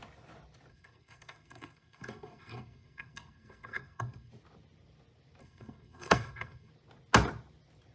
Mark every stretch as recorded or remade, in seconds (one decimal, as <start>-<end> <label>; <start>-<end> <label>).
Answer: 0.0-0.7 recorded; 0.7-4.3 remade; 4.3-5.4 recorded; 5.4-6.7 remade; 6.7-7.9 recorded